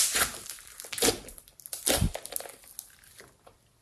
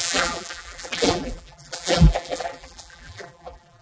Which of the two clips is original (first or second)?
first